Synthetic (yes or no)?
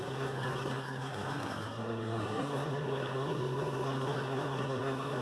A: yes